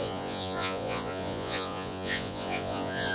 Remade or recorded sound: remade